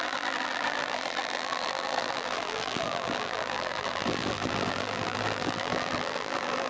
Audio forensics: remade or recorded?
remade